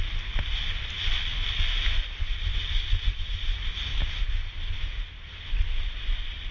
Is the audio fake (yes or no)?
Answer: no